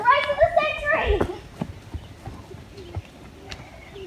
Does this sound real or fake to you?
real